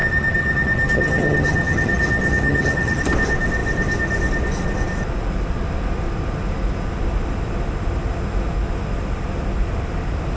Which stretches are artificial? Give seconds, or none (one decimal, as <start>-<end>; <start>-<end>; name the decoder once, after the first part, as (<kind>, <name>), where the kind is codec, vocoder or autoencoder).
0.0-3.0 (vocoder, HiFi-GAN)